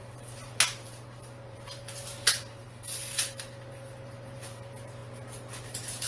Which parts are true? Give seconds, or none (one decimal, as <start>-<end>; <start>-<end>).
5.0-6.1